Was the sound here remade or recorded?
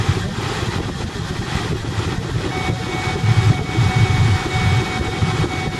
recorded